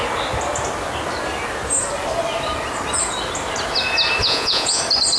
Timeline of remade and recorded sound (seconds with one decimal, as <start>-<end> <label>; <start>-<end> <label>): 0.0-4.2 recorded; 4.2-4.8 remade; 4.8-5.2 recorded